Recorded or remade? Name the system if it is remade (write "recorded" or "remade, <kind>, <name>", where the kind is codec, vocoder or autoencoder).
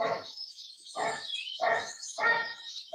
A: remade, autoencoder, DAC-VAE